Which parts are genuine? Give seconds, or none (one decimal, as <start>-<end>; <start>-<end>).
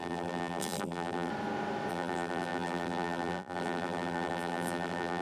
1.3-1.9